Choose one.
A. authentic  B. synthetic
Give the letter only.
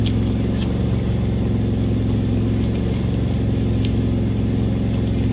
A